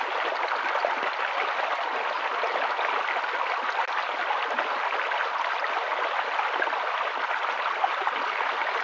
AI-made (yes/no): no